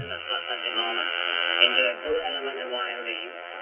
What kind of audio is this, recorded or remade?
remade